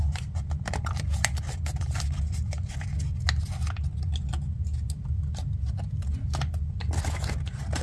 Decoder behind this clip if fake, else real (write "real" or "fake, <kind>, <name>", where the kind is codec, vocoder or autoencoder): real